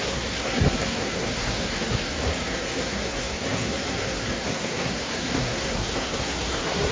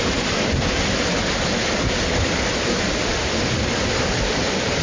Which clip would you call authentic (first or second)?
second